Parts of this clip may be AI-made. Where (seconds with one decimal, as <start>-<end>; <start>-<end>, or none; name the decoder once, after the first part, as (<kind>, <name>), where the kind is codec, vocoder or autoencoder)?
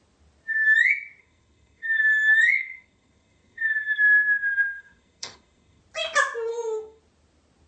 1.2-5.8 (codec, SNAC); 6.5-7.0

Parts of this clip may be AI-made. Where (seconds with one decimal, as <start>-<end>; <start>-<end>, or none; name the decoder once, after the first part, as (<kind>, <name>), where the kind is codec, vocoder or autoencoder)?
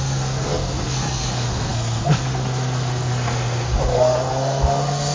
0.0-5.1 (codec, SNAC)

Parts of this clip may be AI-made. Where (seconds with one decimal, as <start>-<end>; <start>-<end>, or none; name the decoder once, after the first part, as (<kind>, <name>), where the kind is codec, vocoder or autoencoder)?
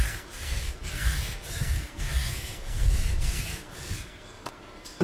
0.0-5.0 (codec, SNAC)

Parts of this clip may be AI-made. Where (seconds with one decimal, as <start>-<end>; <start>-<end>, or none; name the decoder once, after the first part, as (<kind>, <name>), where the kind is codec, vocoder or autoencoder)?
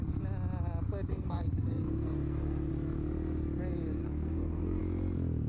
1.1-2.7 (codec, SNAC); 4.0-4.8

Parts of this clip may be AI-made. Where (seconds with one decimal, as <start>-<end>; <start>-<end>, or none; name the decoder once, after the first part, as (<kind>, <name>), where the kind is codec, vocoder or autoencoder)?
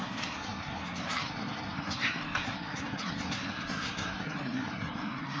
0.0-5.4 (codec, SNAC)